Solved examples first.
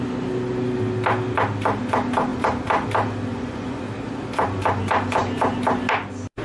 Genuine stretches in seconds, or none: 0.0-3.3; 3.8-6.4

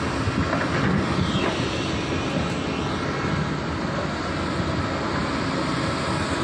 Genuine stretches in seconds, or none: 0.0-6.4

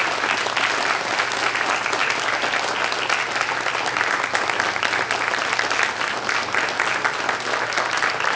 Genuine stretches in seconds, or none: 0.0-8.4

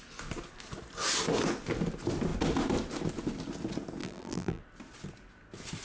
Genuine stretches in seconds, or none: 0.0-4.0; 4.6-5.8

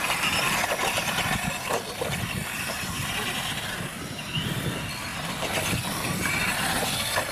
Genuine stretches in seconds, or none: 0.0-7.3

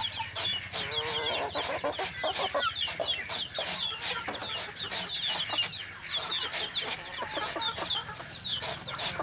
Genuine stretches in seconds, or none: 0.0-9.2